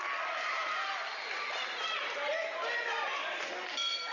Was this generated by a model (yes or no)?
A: yes